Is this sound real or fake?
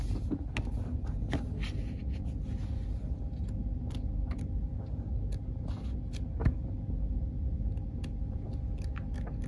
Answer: real